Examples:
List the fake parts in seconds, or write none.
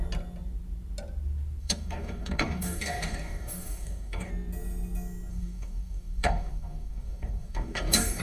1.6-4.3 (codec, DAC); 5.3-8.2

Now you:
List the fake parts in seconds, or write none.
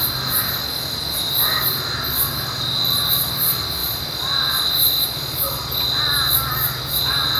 3.8-4.7 (vocoder, BigVGAN v2)